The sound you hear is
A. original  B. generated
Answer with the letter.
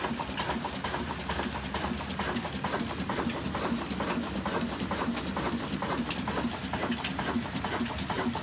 A